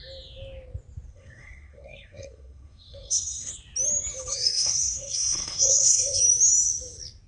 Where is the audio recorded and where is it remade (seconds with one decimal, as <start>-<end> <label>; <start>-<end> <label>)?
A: 0.0-1.1 recorded; 1.1-3.5 remade; 3.5-4.3 recorded; 4.3-6.2 remade; 6.2-7.3 recorded